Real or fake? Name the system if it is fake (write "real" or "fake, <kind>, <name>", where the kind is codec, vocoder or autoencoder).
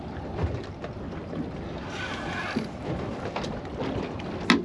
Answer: real